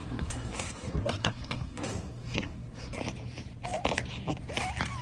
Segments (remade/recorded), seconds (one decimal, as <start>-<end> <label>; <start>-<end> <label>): 0.0-3.0 remade; 3.0-5.0 recorded